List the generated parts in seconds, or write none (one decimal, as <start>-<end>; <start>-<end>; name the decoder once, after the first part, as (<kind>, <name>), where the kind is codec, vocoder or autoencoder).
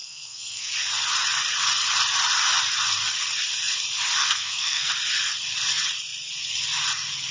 0.0-0.7 (codec, SNAC); 4.2-4.9